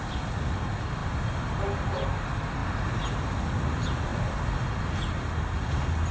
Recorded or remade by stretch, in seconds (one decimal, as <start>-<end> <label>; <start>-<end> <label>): 0.0-4.1 recorded; 4.1-4.8 remade; 4.8-6.1 recorded